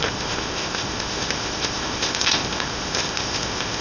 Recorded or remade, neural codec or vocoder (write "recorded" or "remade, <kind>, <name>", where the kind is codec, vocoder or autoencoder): remade, codec, ZipCodec